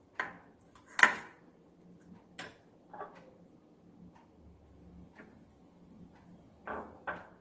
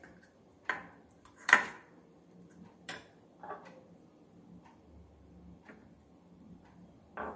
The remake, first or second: second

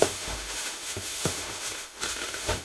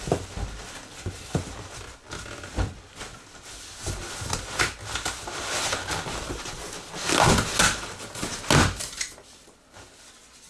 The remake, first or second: first